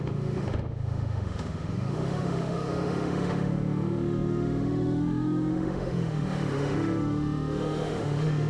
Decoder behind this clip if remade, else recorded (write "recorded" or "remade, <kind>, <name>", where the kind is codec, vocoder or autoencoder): remade, autoencoder, DAC-VAE